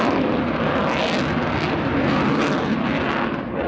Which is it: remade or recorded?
recorded